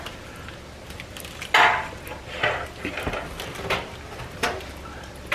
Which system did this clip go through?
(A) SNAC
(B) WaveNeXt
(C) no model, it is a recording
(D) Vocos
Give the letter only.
C